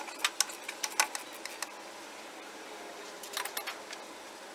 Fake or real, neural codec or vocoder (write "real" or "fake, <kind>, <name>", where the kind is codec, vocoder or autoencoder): real